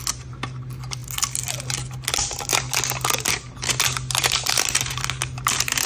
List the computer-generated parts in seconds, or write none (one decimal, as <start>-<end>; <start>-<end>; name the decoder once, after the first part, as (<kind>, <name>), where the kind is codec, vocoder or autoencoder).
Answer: none

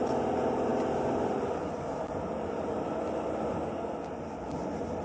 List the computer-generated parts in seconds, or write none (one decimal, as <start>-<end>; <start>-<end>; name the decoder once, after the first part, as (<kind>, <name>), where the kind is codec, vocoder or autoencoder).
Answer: none

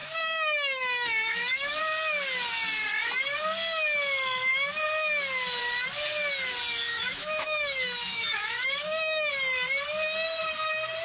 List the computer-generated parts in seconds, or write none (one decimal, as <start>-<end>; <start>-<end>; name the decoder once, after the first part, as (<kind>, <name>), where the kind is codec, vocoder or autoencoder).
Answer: 0.0-1.8 (autoencoder, DAC-VAE); 6.9-9.3

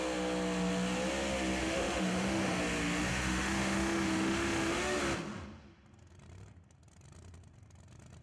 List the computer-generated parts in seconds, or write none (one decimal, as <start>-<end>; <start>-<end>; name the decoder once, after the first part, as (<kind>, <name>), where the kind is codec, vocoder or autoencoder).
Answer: 1.6-2.6 (autoencoder, DAC-VAE); 3.1-5.0